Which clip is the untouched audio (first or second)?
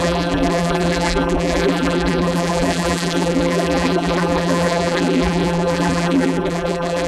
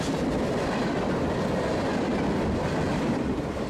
second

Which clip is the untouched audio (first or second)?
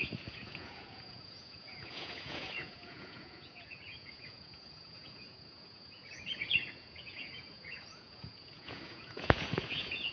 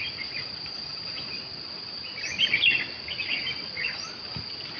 second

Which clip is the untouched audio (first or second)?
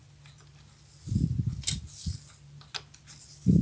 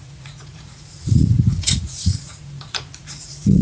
first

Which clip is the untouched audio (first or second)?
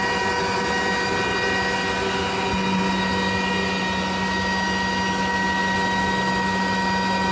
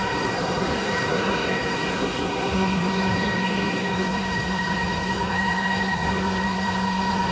first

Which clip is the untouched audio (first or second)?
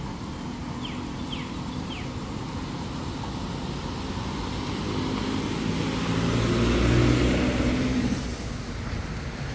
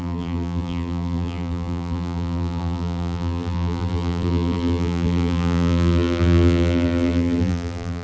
first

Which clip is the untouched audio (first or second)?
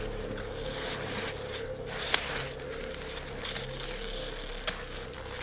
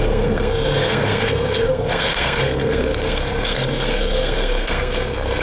first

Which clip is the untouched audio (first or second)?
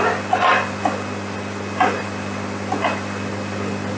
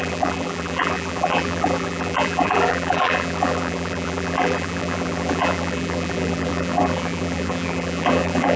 first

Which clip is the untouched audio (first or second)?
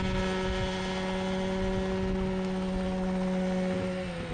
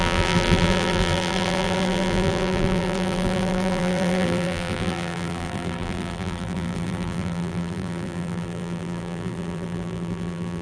first